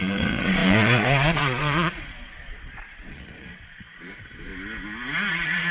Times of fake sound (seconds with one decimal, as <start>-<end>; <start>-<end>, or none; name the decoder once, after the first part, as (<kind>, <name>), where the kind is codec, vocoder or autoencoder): 0.0-4.5 (vocoder, Vocos); 5.3-5.7